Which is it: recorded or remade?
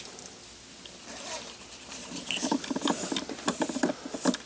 recorded